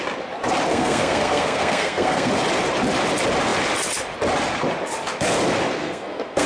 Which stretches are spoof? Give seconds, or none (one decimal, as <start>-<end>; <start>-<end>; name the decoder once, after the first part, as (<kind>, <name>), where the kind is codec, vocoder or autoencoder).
0.7-2.3 (codec, SNAC); 5.8-6.5

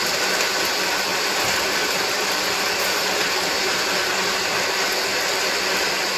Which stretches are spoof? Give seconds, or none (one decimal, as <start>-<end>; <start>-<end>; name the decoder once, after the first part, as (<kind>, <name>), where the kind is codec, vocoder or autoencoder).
1.1-3.8 (vocoder, BigVGAN v2)

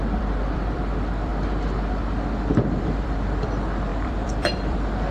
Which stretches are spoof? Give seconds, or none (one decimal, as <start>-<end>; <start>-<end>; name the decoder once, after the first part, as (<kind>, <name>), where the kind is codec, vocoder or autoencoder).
0.0-1.3 (vocoder, BigVGAN v2); 2.8-5.1

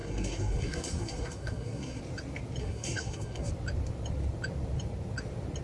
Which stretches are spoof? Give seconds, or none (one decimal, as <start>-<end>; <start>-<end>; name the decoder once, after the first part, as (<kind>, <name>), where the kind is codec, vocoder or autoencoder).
0.0-2.0 (codec, SNAC); 2.6-3.5

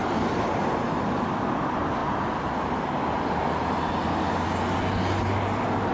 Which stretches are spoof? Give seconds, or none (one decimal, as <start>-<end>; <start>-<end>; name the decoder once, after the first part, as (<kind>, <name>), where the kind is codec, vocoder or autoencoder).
none

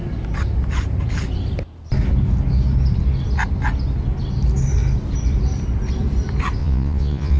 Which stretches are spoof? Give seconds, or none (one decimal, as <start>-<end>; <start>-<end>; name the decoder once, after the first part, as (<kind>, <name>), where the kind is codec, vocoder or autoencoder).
6.6-7.4 (vocoder, Vocos)

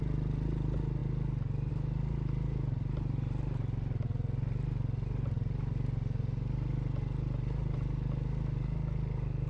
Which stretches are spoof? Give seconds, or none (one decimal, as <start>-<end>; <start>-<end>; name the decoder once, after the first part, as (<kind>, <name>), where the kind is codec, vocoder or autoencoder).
none